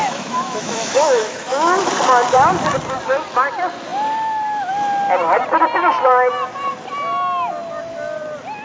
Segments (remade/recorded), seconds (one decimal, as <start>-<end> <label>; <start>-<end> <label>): 0.0-1.9 remade; 1.9-8.6 recorded